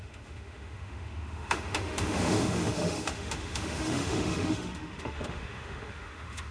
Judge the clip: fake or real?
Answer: fake